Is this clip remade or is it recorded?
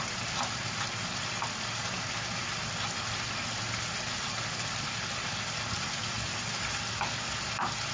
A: recorded